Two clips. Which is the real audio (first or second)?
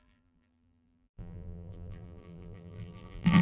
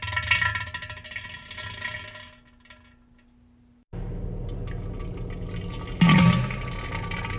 second